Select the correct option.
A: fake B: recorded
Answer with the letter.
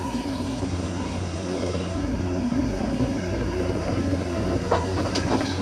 A